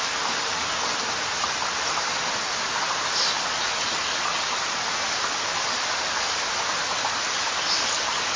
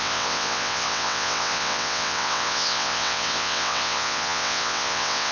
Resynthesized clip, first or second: second